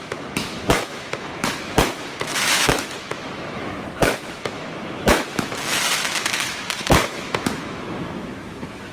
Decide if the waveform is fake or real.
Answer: fake